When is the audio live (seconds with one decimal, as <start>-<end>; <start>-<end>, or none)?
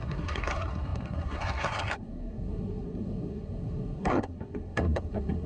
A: none